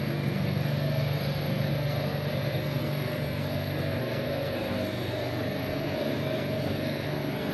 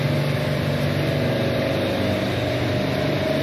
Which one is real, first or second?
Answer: second